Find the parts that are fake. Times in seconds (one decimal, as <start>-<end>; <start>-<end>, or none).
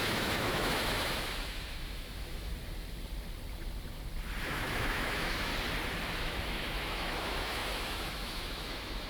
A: 0.0-2.5; 4.4-5.5; 6.2-9.1